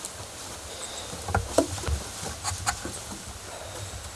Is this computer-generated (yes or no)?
no